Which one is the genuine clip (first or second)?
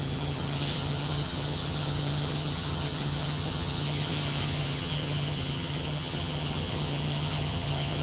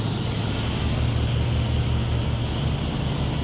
second